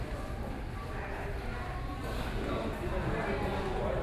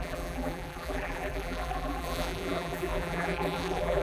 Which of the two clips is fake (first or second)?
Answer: second